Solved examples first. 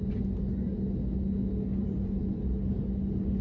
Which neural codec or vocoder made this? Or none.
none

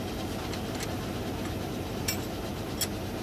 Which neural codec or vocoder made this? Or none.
none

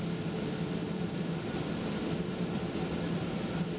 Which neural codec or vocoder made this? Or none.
none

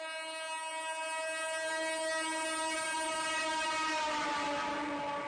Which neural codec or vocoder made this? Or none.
none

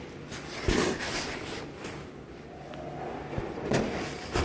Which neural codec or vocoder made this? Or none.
none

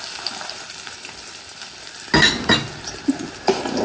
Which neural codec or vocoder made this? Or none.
none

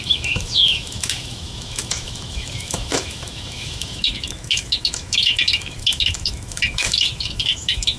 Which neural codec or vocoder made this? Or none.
autoencoder, DAC-VAE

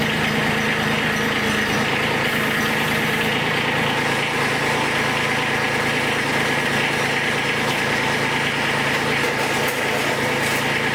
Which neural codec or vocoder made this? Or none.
none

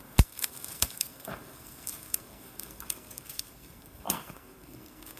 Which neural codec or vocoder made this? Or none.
codec, SNAC